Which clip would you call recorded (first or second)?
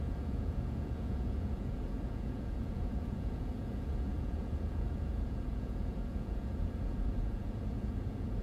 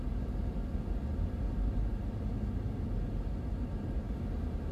second